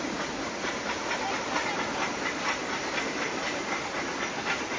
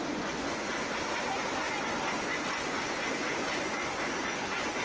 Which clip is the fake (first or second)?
second